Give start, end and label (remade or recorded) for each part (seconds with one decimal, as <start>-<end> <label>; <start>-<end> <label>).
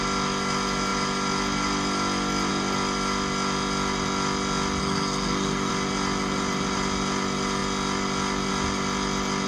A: 0.0-4.8 recorded; 4.8-5.7 remade; 5.7-9.5 recorded